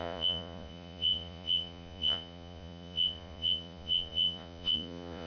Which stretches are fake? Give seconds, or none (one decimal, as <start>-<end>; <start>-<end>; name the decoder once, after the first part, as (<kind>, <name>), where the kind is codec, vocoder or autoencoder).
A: 0.0-5.3 (vocoder, Vocos)